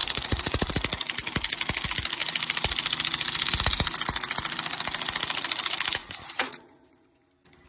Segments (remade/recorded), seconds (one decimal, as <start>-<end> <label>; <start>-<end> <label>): 0.0-0.7 remade; 0.7-6.0 recorded; 6.0-7.3 remade; 7.3-7.7 recorded